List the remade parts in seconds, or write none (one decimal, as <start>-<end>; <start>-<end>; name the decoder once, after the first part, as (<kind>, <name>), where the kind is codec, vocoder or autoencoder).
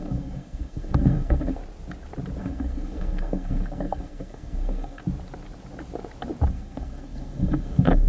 0.0-1.6 (codec, SNAC); 2.4-5.0; 6.5-8.1